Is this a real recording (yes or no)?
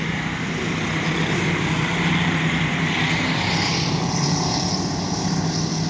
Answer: yes